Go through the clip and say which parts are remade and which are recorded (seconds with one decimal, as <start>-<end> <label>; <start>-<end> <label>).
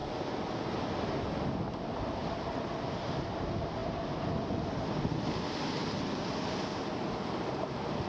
0.0-8.1 recorded